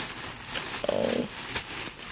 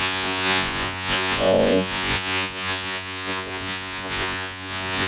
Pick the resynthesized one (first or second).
second